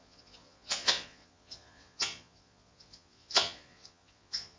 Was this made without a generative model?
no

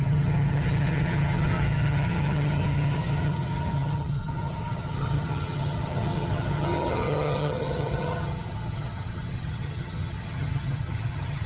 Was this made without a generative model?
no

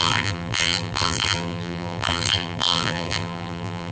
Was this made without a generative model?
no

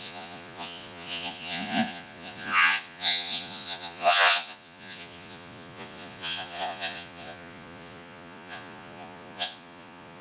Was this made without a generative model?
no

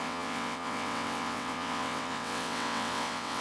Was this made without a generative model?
no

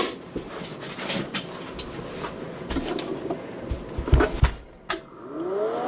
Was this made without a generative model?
yes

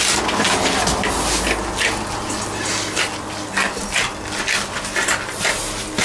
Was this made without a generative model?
yes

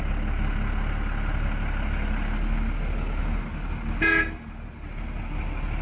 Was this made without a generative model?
yes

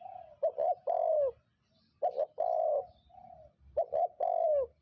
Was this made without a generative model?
yes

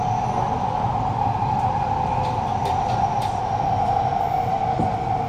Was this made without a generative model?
yes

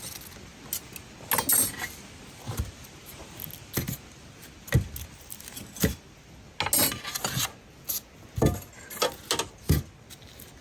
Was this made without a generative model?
yes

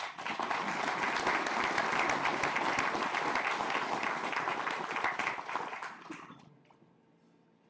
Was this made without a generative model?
yes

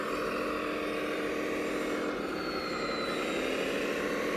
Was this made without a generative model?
yes